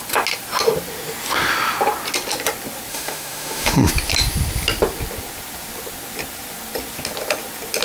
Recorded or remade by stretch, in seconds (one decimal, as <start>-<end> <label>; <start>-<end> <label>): 0.0-2.9 recorded; 2.9-3.9 remade; 3.9-7.8 recorded